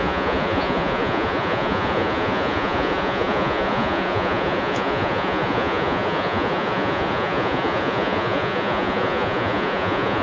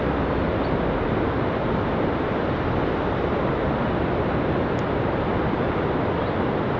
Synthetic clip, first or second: first